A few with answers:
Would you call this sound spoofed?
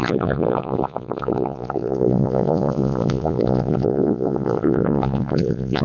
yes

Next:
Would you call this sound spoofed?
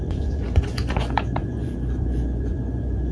yes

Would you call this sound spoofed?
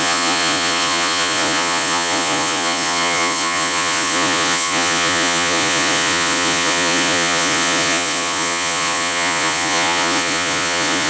yes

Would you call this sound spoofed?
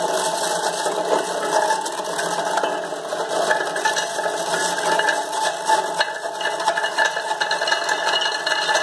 no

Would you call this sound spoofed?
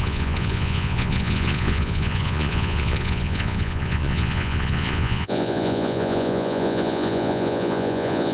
yes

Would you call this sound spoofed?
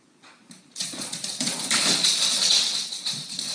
yes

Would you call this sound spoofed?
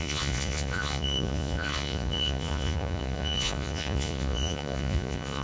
yes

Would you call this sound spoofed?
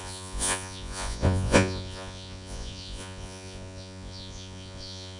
yes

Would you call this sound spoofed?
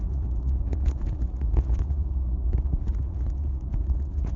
yes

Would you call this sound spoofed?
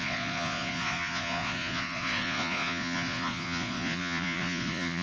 yes